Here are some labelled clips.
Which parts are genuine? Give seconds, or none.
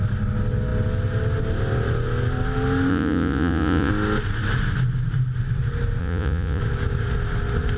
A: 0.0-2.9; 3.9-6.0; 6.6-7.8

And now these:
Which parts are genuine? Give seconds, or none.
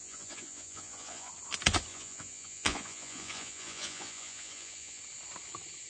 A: 1.3-1.9; 5.0-5.9